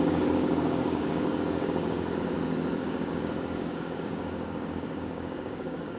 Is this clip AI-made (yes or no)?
yes